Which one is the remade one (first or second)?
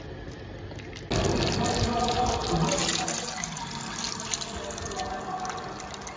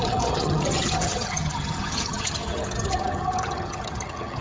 second